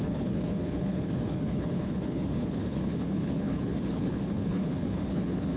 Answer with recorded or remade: remade